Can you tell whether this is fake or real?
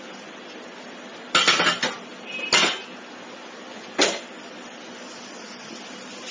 real